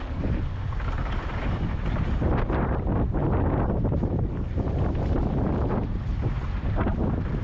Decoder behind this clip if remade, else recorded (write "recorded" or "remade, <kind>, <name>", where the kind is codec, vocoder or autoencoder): recorded